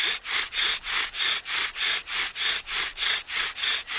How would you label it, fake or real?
real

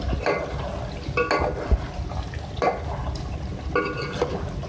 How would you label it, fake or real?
real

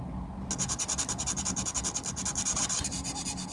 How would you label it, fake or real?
real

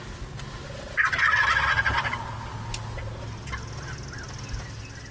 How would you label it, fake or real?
real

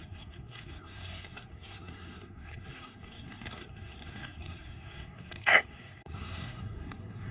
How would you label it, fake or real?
fake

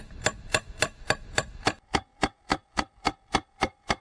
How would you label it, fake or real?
real